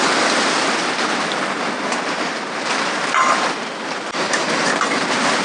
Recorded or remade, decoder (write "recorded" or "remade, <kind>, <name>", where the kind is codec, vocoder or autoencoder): recorded